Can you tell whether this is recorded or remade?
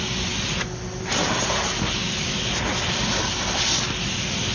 recorded